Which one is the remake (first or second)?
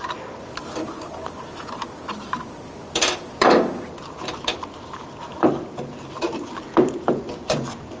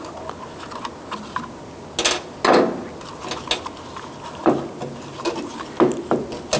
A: first